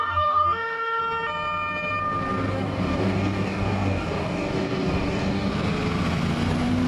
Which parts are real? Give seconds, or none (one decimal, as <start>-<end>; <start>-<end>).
1.0-2.5; 5.5-6.9